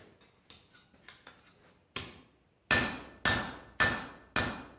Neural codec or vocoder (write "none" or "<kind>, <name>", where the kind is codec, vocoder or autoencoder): none